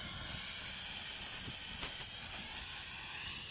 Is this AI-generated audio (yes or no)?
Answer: no